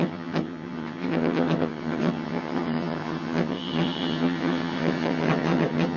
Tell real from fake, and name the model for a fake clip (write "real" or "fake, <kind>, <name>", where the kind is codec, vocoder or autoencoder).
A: fake, vocoder, HiFi-GAN